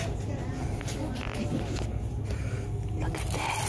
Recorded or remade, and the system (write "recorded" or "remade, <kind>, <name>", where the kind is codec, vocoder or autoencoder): recorded